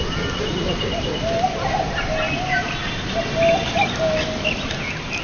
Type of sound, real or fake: real